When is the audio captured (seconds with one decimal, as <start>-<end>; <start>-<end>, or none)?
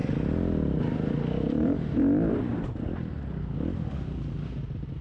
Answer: 0.0-0.8; 2.5-5.0